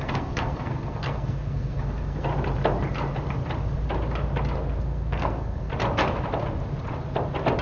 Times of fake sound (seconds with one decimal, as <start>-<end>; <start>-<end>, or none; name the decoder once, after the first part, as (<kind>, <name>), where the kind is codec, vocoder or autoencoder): 0.0-2.3 (codec, SNAC); 4.8-5.7